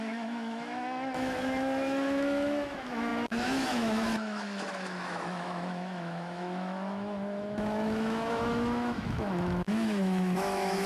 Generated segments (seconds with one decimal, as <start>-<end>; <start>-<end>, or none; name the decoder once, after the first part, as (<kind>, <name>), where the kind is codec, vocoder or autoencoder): 0.0-10.9 (autoencoder, DAC-VAE)